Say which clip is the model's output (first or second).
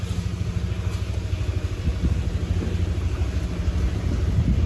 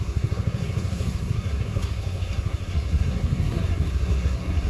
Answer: second